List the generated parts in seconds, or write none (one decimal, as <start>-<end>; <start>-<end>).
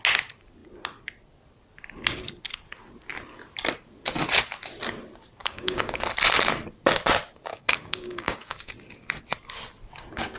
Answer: 5.4-6.0; 7.5-8.7